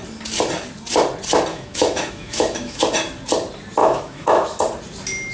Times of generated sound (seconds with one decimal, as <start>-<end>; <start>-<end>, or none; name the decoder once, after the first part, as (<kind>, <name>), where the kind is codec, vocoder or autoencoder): 1.5-2.8 (autoencoder, DAC-VAE); 3.8-4.6